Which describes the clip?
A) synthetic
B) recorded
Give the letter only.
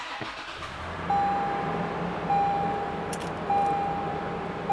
B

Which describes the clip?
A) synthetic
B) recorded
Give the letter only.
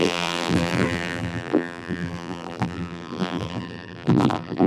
A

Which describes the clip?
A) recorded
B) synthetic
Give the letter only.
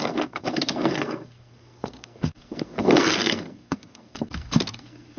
B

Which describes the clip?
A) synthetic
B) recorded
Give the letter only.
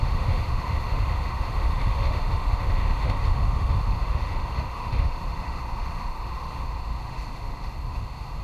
A